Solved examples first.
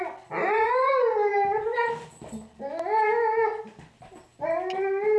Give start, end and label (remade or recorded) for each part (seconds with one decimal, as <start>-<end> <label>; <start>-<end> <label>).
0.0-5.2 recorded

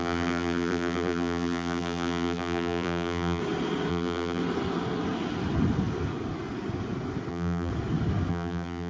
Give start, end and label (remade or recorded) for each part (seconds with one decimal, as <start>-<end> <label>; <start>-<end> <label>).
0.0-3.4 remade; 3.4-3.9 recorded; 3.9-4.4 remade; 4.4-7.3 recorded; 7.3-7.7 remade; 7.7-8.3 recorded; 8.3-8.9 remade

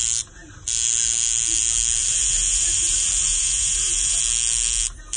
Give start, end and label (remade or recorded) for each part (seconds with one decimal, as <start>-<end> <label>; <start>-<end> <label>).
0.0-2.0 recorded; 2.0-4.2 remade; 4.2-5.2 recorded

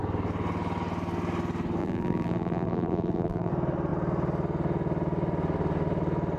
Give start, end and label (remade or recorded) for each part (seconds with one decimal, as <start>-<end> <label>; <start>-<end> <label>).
0.0-1.8 recorded; 1.8-3.5 remade; 3.5-6.4 recorded

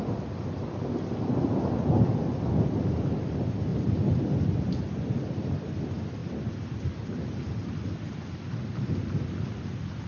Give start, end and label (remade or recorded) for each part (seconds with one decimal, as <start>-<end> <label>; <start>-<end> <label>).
0.0-3.7 recorded; 3.7-4.2 remade; 4.2-10.1 recorded

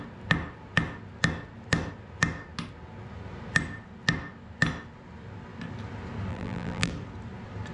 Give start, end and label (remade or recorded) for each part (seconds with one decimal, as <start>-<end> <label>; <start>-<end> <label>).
0.0-6.3 recorded; 6.3-6.9 remade; 6.9-7.7 recorded